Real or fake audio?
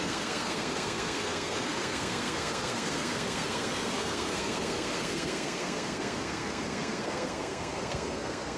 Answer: fake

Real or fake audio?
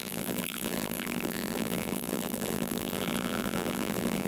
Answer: fake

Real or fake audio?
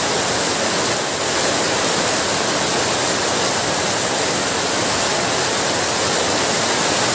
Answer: real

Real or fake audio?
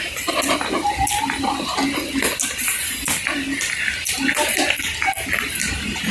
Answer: real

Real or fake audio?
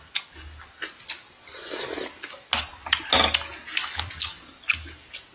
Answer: real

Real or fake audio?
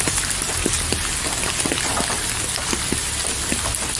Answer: real